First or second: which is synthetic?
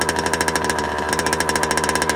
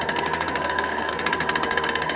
second